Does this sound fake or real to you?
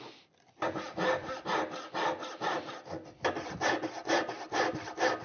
real